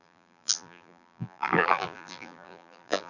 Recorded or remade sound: remade